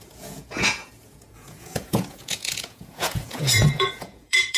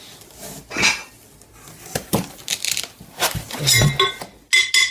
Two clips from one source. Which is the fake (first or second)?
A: first